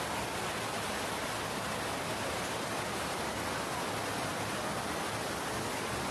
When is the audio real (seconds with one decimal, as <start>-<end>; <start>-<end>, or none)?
0.0-6.1